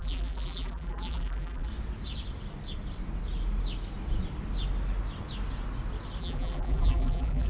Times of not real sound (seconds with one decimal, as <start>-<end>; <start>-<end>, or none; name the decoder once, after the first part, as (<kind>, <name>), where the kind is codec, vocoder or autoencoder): 0.0-1.7 (vocoder, BigVGAN v2); 6.2-7.5